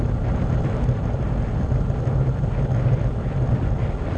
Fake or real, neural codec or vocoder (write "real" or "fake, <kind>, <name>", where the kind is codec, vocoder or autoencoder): real